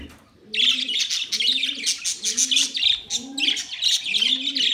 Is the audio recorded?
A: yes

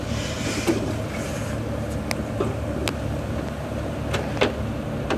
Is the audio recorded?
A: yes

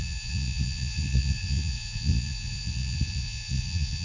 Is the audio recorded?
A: no